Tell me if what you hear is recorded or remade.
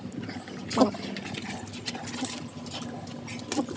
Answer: recorded